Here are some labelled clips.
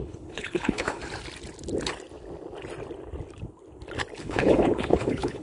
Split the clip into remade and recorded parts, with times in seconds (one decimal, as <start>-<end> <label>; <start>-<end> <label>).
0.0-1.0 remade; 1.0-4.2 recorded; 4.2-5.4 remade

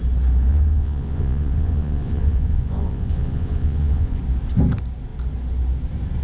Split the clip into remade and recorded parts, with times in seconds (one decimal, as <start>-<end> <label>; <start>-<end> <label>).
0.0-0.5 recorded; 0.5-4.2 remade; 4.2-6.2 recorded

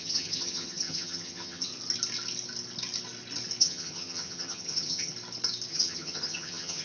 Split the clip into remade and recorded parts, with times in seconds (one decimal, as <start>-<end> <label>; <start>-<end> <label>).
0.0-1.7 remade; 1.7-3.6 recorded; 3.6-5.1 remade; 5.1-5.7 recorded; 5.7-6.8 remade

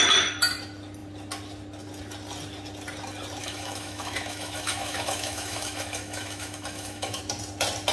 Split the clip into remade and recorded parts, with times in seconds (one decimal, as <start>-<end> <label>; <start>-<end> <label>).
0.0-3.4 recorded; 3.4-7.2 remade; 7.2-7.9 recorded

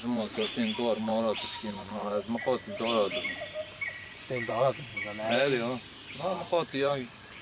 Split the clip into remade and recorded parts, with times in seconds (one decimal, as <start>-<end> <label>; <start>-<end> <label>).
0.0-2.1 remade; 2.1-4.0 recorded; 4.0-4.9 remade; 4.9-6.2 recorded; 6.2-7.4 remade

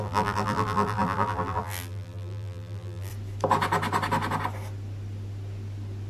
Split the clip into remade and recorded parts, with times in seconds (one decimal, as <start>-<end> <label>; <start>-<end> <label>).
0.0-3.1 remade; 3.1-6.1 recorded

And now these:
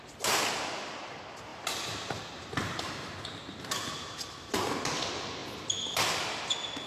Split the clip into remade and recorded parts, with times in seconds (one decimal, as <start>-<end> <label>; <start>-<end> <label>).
0.0-1.5 recorded; 1.5-4.3 remade; 4.3-6.9 recorded

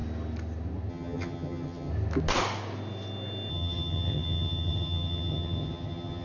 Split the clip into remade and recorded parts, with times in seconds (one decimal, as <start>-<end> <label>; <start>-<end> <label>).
0.0-0.9 recorded; 0.9-1.9 remade; 1.9-3.5 recorded; 3.5-6.2 remade